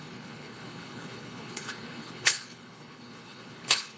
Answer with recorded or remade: remade